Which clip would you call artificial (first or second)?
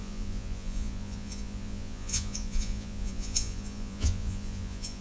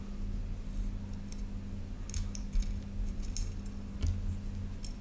first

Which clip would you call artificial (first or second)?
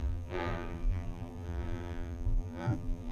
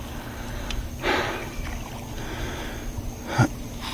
first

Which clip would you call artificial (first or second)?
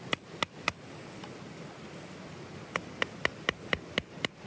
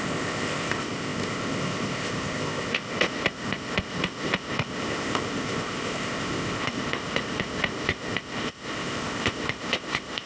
second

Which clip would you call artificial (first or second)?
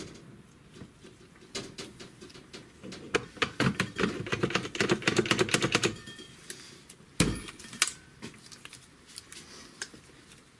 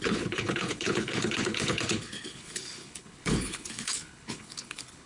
second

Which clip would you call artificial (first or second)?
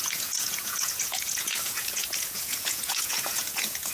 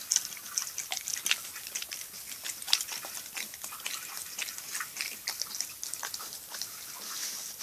first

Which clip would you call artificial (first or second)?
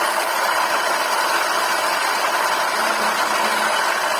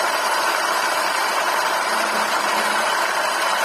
second